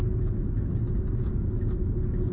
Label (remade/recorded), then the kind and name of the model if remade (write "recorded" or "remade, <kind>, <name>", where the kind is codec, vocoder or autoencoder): recorded